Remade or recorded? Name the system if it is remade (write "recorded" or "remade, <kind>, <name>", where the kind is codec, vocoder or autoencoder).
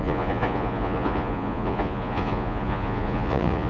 remade, vocoder, Vocos